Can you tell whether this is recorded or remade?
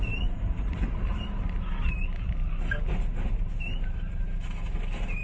recorded